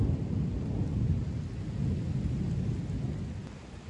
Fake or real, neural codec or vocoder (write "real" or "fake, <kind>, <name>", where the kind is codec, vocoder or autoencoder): real